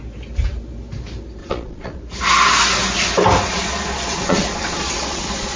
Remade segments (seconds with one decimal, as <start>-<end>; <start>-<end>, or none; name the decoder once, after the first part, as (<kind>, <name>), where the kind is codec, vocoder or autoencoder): 1.4-2.0 (vocoder, Vocos); 3.5-5.6